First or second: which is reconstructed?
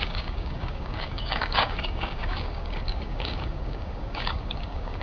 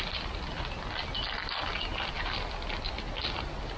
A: first